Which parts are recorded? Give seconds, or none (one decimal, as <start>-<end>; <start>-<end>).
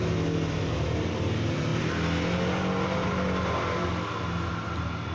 0.0-5.1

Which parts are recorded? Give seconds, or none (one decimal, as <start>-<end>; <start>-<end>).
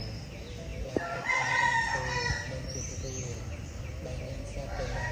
0.0-5.1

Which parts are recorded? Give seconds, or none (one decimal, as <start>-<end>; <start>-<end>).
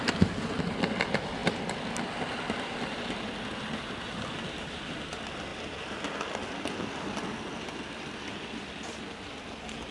0.0-9.9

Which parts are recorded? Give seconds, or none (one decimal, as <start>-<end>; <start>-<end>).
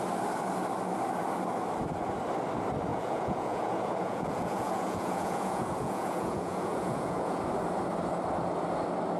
0.0-2.9; 7.4-9.2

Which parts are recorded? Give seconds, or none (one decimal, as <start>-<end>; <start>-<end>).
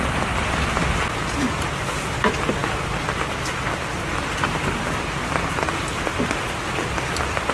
0.0-7.5